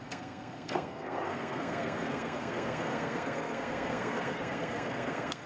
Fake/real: fake